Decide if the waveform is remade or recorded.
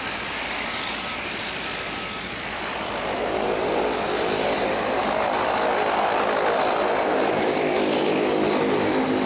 recorded